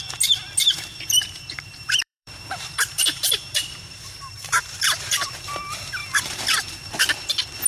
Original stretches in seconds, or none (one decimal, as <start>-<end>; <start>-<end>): 0.0-0.9; 4.3-7.7